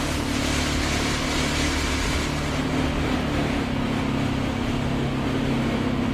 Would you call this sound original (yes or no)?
yes